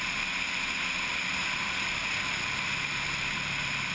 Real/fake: real